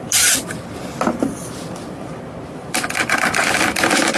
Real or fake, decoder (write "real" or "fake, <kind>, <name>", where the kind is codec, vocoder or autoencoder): fake, vocoder, BigVGAN v2